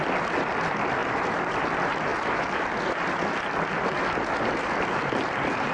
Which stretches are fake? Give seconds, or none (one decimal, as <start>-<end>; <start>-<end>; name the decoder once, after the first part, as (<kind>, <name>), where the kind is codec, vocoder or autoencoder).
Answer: none